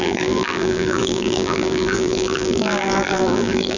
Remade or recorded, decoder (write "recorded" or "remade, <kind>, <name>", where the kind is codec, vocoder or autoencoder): remade, vocoder, BigVGAN v2